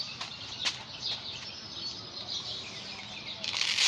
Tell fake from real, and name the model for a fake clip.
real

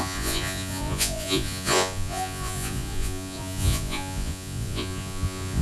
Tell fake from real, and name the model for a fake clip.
fake, vocoder, Vocos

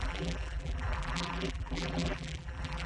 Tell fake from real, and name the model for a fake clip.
fake, vocoder, BigVGAN v2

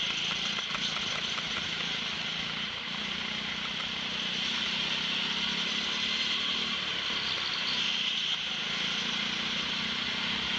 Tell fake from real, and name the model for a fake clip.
real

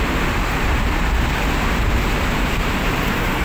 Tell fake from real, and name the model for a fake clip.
fake, vocoder, BigVGAN v2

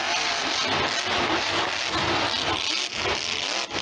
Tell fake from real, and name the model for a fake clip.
real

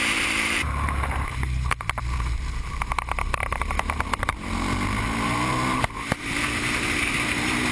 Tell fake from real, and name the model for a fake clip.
fake, vocoder, BigVGAN v2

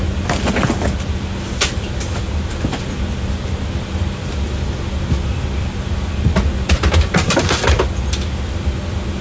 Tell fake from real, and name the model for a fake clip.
real